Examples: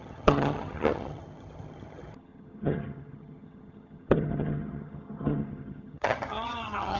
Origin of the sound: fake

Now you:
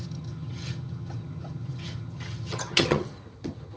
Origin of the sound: fake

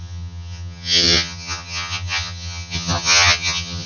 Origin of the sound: fake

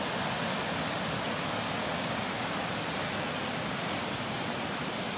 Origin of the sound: real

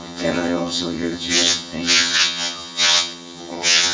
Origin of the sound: fake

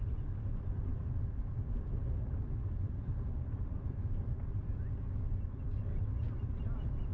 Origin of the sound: real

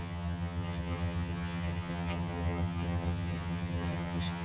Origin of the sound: fake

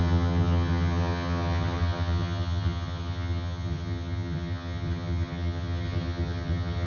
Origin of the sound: fake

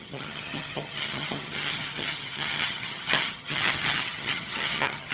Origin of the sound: fake